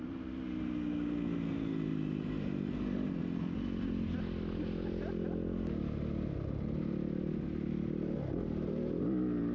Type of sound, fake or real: real